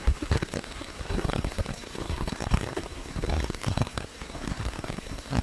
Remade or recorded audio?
remade